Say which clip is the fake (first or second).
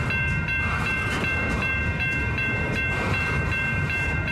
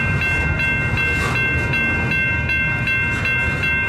first